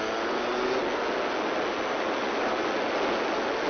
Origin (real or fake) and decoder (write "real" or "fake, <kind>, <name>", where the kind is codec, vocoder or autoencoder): real